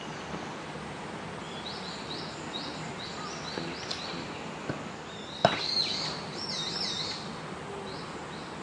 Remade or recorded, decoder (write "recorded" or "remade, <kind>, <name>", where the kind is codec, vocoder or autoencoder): recorded